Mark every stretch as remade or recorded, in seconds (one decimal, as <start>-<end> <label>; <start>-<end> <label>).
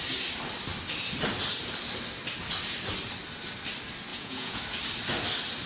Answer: 0.0-4.1 recorded; 4.1-4.6 remade; 4.6-5.7 recorded